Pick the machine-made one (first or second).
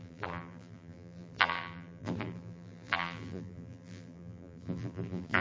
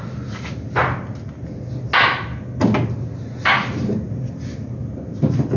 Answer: first